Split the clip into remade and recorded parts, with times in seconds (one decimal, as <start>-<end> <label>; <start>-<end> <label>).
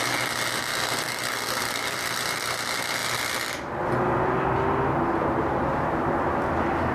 0.0-6.9 recorded